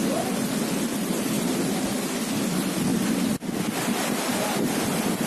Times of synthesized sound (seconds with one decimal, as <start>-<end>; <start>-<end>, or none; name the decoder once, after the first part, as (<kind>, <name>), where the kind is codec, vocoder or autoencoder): 0.9-1.6 (vocoder, BigVGAN v2)